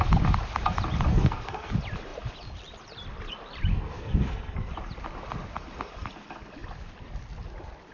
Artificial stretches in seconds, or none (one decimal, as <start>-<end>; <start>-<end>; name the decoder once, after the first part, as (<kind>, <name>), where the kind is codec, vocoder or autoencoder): 1.1-1.7 (codec, SNAC); 3.7-4.7